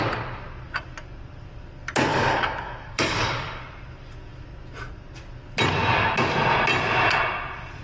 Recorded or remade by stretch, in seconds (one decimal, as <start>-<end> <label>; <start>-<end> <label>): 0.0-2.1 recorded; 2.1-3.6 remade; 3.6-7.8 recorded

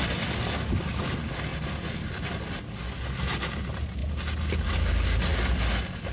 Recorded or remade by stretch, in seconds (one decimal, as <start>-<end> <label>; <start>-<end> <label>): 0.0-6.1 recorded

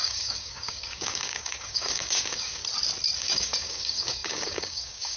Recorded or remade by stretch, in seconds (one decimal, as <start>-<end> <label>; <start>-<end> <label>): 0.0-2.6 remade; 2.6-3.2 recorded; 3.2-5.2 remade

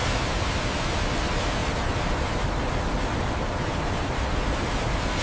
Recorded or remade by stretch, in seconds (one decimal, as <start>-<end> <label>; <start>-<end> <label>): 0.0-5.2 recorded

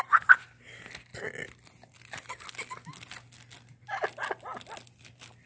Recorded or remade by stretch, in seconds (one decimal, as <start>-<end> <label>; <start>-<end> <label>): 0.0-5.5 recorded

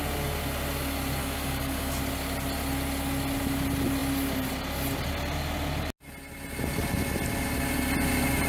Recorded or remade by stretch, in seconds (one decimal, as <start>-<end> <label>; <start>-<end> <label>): 0.0-1.2 recorded; 1.2-2.0 remade; 2.0-8.5 recorded